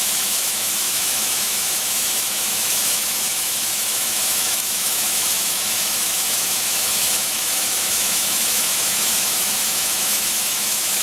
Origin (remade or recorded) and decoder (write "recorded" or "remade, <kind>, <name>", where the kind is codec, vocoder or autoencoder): remade, autoencoder, DAC-VAE